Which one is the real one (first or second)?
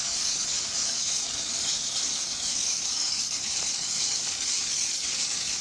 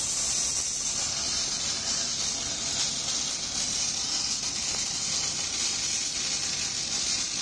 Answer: second